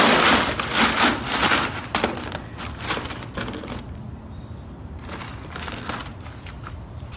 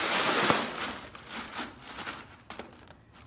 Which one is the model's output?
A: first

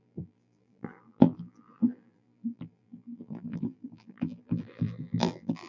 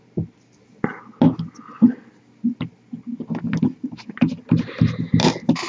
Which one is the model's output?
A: first